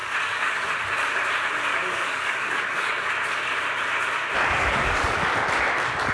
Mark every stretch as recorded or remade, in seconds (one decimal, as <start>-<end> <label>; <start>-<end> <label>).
0.0-0.7 remade; 0.7-1.7 recorded; 1.7-3.1 remade; 3.1-4.4 recorded; 4.4-5.3 remade; 5.3-6.1 recorded